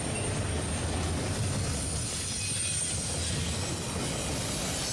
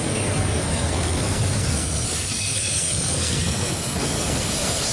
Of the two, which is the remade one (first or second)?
second